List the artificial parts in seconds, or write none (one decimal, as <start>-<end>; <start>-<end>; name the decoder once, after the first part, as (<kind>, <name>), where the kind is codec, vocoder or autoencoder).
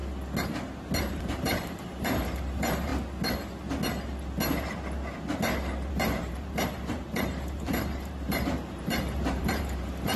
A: 1.1-2.9 (vocoder, BigVGAN v2); 5.9-10.2